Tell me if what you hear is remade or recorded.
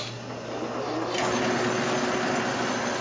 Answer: recorded